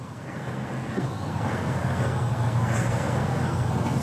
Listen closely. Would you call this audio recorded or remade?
remade